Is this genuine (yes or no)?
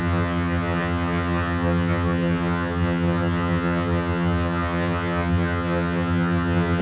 no